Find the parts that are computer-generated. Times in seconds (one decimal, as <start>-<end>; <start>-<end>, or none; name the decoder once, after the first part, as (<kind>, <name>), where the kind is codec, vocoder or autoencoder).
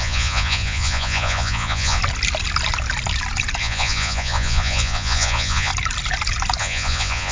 0.0-2.0 (vocoder, Vocos); 3.6-5.7; 6.6-7.3